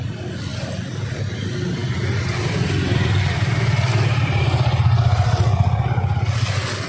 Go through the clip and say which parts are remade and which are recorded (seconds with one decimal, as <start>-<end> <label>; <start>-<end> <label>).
0.0-6.9 recorded